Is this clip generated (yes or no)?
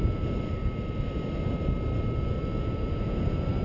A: no